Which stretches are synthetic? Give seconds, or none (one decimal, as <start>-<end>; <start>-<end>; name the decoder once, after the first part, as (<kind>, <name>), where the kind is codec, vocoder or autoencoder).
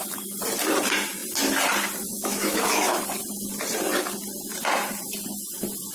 2.1-3.0 (autoencoder, DAC-VAE)